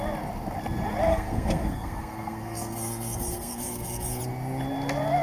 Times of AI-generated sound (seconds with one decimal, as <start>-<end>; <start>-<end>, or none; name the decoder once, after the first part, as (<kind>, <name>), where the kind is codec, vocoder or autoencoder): 1.1-4.2 (codec, SNAC)